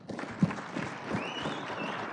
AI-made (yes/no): no